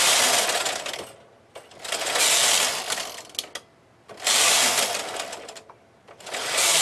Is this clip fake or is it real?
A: real